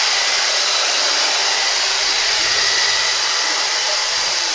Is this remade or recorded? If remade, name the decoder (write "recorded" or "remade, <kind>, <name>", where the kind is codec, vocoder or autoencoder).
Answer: remade, vocoder, BigVGAN v2